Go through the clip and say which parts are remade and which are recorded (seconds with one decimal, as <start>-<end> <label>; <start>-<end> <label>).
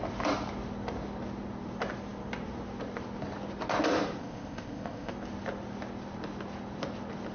0.0-4.2 recorded; 4.2-5.1 remade; 5.1-7.3 recorded